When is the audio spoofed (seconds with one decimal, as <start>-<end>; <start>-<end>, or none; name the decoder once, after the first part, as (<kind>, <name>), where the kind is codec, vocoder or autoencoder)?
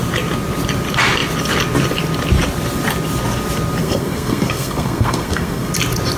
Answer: 3.8-5.7 (codec, SNAC)